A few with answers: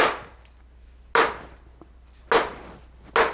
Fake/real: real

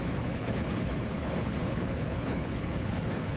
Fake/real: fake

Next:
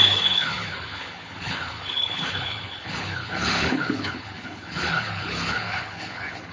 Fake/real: fake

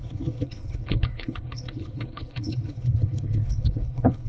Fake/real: fake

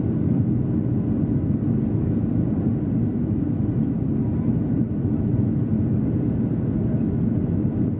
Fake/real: real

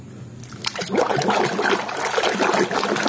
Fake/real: real